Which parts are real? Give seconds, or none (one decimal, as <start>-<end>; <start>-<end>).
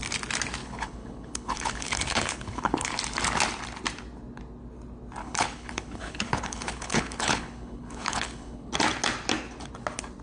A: 0.0-0.6; 3.0-5.2; 8.7-10.2